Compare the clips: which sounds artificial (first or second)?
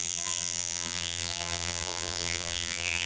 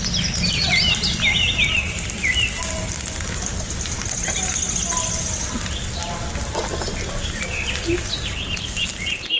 first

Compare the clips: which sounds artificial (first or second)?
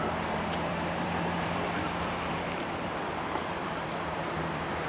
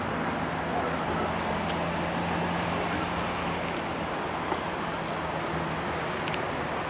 first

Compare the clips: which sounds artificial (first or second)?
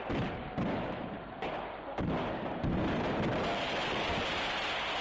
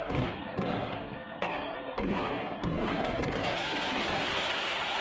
second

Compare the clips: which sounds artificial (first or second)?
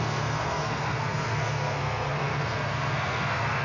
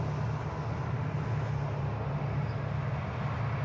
first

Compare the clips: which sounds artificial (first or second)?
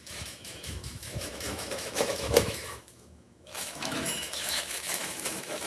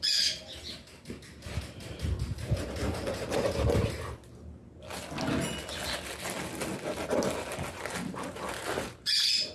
first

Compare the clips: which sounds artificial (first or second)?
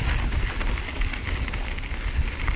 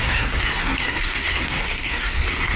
second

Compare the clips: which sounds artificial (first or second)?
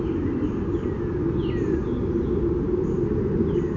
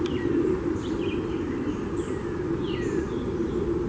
second